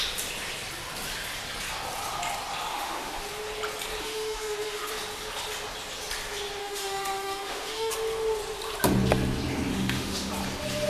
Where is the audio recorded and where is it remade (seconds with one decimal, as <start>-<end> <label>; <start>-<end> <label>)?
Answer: 0.0-2.7 recorded; 2.7-3.2 remade; 3.2-4.0 recorded; 4.0-4.9 remade; 4.9-6.6 recorded; 6.6-7.9 remade; 7.9-9.7 recorded; 9.7-10.3 remade; 10.3-10.9 recorded